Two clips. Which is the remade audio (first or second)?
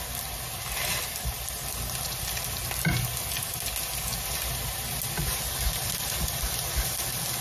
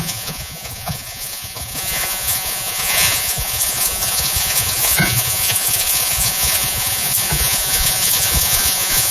second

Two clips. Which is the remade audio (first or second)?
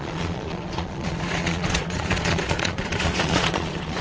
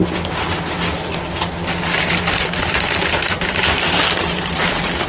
first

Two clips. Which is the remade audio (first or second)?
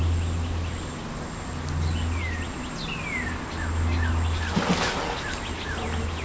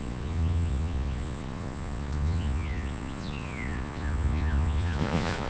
second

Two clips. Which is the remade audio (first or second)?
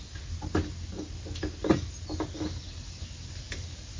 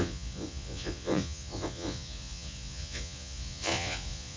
second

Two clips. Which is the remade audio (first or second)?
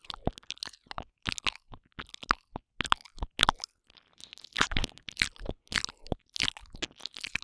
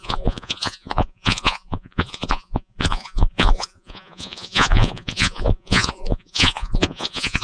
second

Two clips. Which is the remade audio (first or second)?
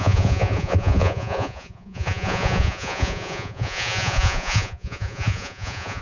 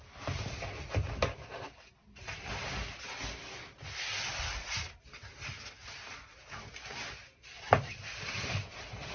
first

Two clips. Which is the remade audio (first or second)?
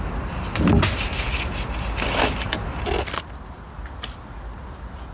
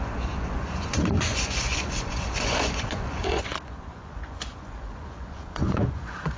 second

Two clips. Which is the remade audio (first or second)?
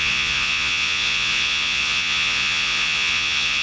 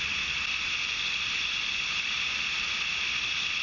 first